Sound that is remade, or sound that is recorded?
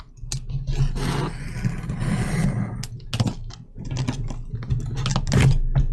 recorded